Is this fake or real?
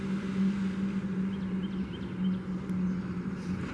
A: real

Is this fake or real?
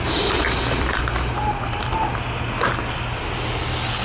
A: real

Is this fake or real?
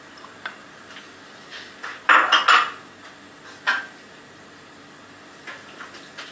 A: real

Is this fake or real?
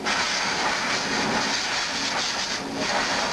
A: real